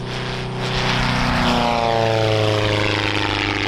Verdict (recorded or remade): recorded